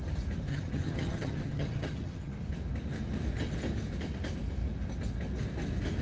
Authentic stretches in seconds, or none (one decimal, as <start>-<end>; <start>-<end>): 0.0-0.5; 2.3-6.0